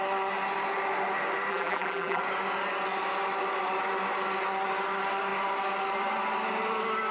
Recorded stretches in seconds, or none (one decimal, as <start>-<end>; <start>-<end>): 0.0-1.5; 2.2-7.1